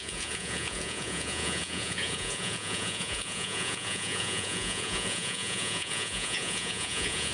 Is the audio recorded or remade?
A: remade